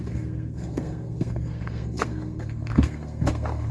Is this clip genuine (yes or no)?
no